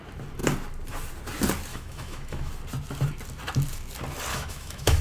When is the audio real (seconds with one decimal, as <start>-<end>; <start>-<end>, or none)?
0.0-1.7; 2.5-4.3